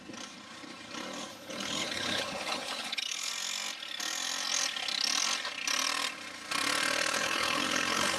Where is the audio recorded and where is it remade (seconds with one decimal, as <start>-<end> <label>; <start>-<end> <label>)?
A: 0.0-1.3 recorded; 1.3-3.3 remade; 3.3-7.1 recorded; 7.1-8.2 remade